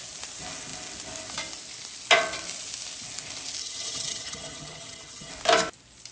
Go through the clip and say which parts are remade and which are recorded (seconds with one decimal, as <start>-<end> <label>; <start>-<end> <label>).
0.0-3.6 recorded; 3.6-5.3 remade; 5.3-6.1 recorded